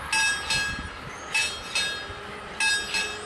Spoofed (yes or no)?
no